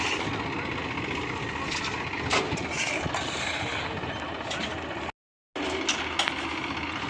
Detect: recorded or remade recorded